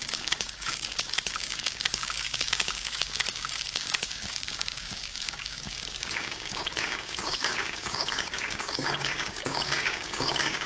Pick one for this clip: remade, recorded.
remade